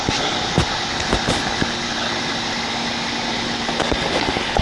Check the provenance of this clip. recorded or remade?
recorded